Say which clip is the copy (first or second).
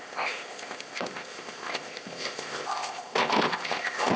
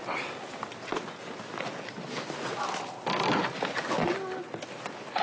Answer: first